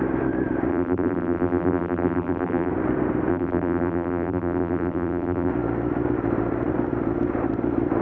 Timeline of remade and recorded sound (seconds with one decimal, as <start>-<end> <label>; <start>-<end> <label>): 0.0-0.7 recorded; 0.7-2.7 remade; 2.7-3.3 recorded; 3.3-5.5 remade; 5.5-8.0 recorded